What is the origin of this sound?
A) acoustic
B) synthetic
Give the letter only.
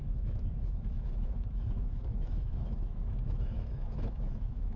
B